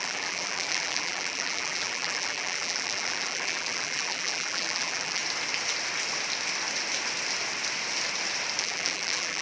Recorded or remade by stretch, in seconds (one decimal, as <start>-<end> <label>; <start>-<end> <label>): 0.0-5.2 remade; 5.2-8.6 recorded; 8.6-9.4 remade